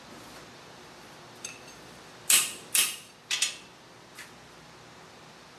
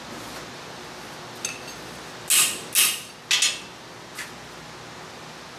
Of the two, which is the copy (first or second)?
first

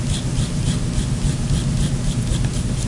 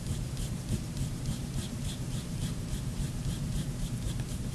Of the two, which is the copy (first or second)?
second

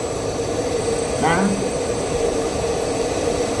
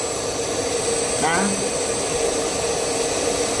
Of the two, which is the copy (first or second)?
first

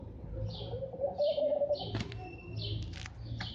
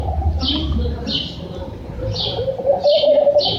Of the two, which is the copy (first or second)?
second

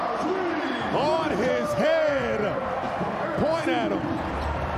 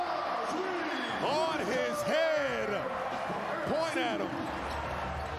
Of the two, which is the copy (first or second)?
first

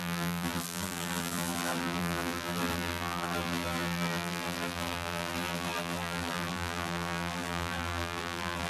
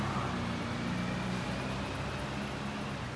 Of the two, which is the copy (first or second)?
first